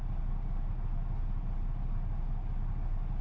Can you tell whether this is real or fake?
real